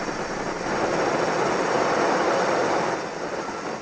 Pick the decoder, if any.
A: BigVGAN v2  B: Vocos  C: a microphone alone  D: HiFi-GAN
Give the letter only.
C